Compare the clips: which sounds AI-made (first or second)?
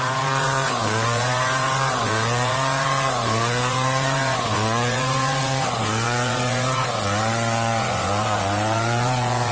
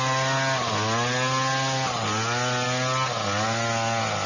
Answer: first